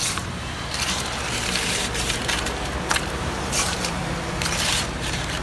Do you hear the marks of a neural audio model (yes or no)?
yes